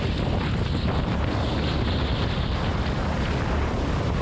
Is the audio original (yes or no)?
yes